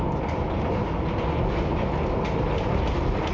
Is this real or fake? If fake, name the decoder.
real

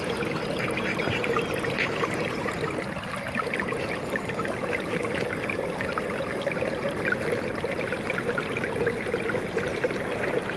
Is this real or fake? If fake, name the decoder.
real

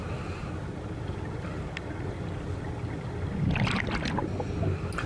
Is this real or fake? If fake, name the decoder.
real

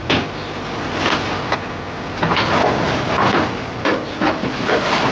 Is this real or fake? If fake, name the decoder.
real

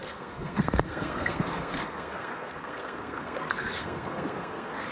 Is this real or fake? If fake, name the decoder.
fake, codec, SNAC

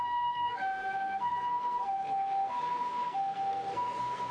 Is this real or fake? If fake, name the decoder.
fake, codec, SNAC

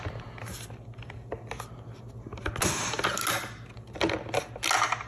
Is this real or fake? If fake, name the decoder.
real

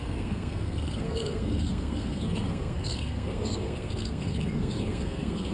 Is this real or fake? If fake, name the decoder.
fake, codec, SNAC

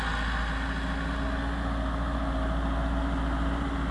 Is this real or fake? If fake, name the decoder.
real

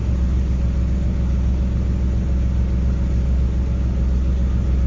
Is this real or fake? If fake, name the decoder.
real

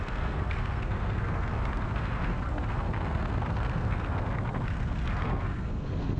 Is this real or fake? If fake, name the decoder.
fake, codec, SNAC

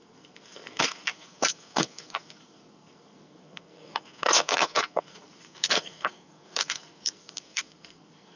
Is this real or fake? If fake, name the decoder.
fake, codec, SNAC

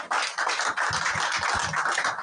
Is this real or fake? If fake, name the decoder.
real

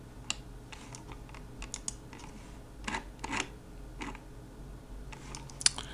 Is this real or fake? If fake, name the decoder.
real